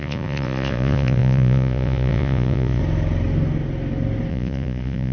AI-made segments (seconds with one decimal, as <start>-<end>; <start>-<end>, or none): 0.0-2.8; 4.3-5.1